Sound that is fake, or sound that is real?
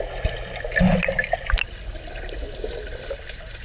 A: real